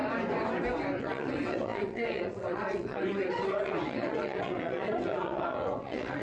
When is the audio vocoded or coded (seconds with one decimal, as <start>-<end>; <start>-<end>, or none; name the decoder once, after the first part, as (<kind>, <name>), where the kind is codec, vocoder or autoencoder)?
1.0-6.2 (vocoder, WaveNeXt)